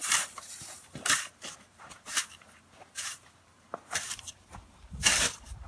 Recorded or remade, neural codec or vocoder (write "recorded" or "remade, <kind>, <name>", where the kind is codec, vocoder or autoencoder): remade, vocoder, BigVGAN v2